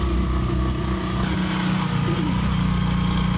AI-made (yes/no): no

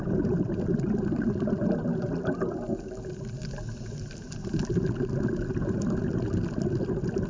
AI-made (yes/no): no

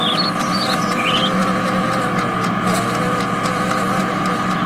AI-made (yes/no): no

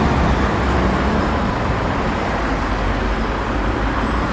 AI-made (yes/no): no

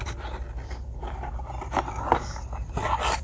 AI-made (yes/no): no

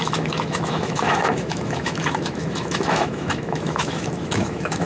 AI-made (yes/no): yes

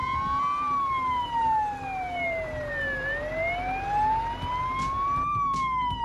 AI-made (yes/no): no